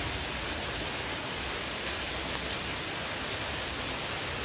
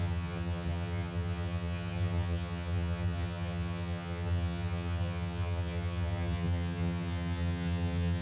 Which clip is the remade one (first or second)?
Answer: second